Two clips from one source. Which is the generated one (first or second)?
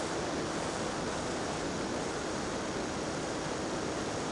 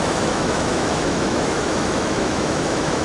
second